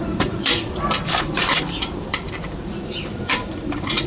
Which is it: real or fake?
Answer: fake